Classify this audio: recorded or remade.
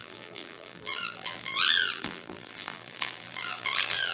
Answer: remade